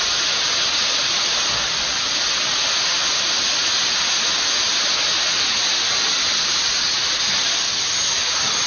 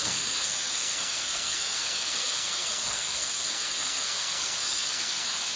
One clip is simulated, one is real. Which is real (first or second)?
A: first